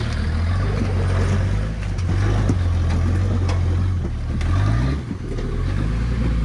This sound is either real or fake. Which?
real